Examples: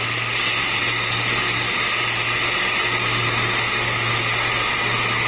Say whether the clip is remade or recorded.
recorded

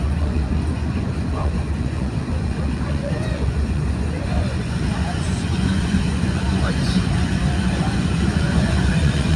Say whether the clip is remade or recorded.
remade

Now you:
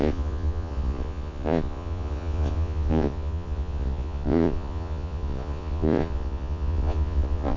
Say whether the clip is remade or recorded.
remade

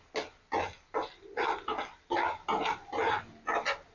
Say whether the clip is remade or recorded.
recorded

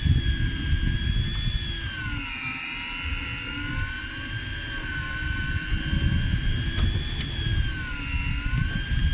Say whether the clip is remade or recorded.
recorded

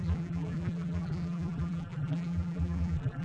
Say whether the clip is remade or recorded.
remade